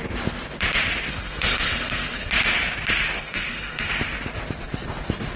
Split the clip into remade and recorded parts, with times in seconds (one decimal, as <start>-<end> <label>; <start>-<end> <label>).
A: 0.0-1.1 recorded; 1.1-2.3 remade; 2.3-3.2 recorded; 3.2-3.9 remade; 3.9-5.4 recorded

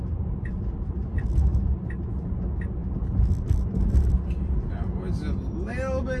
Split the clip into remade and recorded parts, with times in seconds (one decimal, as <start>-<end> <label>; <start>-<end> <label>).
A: 0.0-6.2 recorded